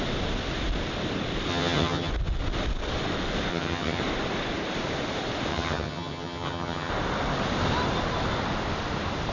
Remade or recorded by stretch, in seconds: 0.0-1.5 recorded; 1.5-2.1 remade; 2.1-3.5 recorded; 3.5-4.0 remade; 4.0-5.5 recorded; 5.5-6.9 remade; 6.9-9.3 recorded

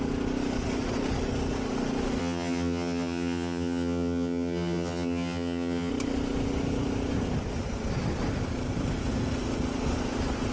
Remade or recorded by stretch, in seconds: 0.0-2.2 recorded; 2.2-5.9 remade; 5.9-10.5 recorded

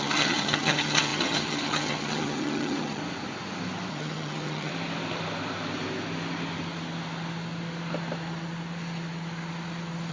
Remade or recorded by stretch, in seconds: 0.0-3.0 remade; 3.0-3.9 recorded; 3.9-4.7 remade; 4.7-10.1 recorded

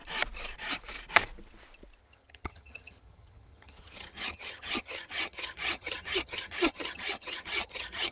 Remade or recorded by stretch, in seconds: 0.0-2.0 recorded; 2.0-8.1 remade